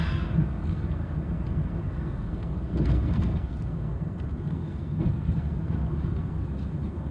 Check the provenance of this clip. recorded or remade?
remade